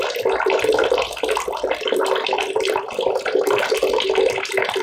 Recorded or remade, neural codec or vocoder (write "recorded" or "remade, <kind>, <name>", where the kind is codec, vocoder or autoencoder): recorded